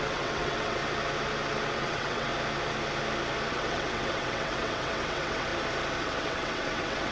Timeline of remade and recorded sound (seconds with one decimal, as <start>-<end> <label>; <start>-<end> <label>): 0.0-0.8 remade; 0.8-1.7 recorded; 1.7-2.3 remade; 2.3-3.5 recorded; 3.5-5.5 remade; 5.5-6.0 recorded; 6.0-7.1 remade